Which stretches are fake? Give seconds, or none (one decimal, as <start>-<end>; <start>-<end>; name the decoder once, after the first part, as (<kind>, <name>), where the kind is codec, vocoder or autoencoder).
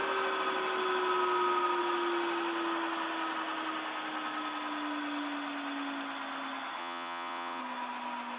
6.8-7.6 (vocoder, WaveNeXt)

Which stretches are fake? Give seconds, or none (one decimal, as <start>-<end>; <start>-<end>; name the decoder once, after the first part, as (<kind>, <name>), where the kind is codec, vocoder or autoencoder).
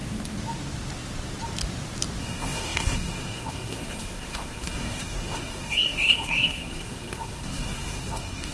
2.2-8.5 (codec, SNAC)